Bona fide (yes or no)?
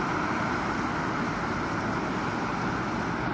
yes